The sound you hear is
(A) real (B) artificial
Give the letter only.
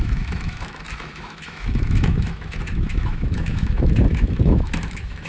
B